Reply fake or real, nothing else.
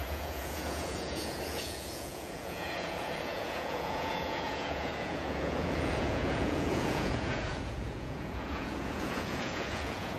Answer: fake